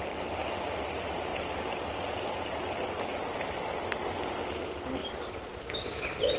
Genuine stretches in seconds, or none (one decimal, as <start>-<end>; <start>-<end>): 0.4-0.9; 1.3-4.3